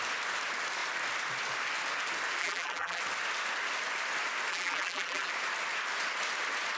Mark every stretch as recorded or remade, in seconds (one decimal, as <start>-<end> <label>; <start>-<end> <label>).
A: 0.0-2.4 recorded; 2.4-3.0 remade; 3.0-4.5 recorded; 4.5-5.3 remade; 5.3-6.8 recorded